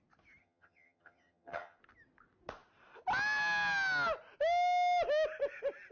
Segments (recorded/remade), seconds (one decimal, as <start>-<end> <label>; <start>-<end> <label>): 0.0-0.4 recorded; 0.4-1.8 remade; 1.8-5.9 recorded